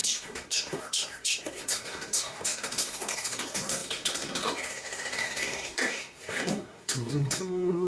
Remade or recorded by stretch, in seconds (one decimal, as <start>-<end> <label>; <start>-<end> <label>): 0.0-7.9 remade